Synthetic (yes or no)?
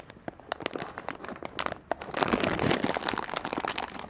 no